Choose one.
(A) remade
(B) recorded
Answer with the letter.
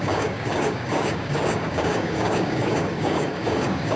A